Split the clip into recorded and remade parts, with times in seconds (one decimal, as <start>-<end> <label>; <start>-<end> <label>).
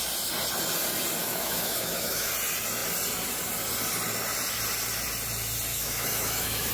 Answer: 0.0-1.2 recorded; 1.2-2.3 remade; 2.3-5.7 recorded; 5.7-6.7 remade